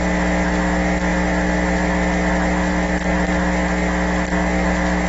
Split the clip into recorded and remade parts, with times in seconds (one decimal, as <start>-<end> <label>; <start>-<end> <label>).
0.0-5.1 recorded